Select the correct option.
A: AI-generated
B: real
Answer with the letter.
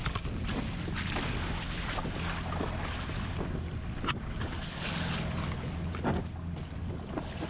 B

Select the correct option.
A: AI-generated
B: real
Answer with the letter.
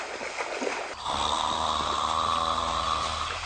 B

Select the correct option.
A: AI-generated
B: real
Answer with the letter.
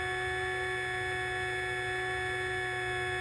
B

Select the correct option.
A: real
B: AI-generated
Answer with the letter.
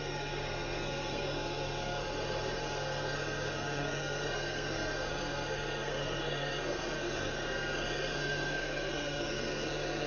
B